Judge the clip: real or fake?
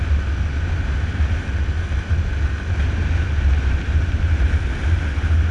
real